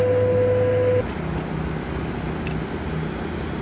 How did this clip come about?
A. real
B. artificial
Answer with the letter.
A